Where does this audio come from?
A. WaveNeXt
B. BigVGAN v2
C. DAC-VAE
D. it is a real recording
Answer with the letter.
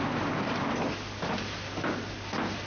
D